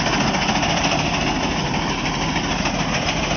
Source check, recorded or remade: recorded